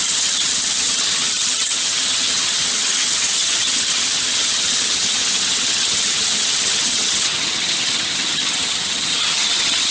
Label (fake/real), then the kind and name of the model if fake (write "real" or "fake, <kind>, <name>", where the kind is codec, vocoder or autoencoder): fake, vocoder, HiFi-GAN